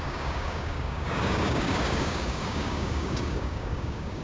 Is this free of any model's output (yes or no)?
no